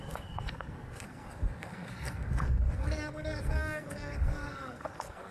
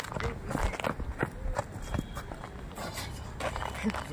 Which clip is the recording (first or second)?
second